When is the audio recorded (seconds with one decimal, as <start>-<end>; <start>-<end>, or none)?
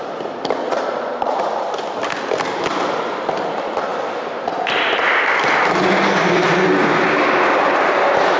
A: 0.0-0.6; 1.4-8.4